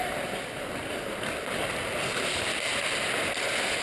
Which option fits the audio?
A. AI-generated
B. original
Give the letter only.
B